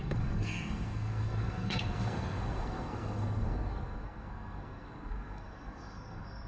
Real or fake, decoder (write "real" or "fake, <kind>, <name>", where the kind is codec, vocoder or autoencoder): fake, codec, SNAC